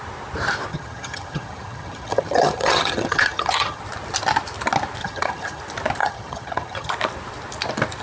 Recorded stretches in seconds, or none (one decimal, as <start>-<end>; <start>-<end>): 0.0-0.7; 3.8-5.0; 5.6-6.0; 6.9-8.0